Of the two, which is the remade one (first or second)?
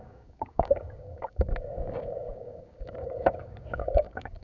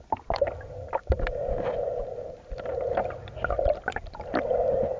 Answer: first